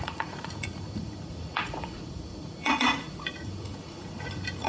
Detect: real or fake fake